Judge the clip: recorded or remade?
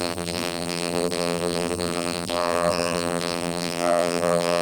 remade